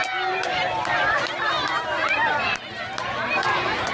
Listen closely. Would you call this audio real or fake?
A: real